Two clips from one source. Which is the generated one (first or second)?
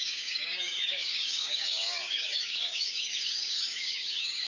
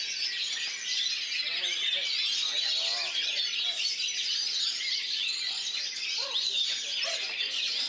first